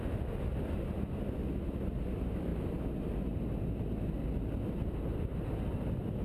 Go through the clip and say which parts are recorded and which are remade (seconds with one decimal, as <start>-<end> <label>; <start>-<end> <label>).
0.0-6.2 recorded